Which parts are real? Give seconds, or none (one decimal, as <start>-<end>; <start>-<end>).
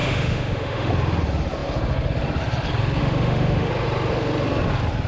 0.9-3.0; 3.7-5.1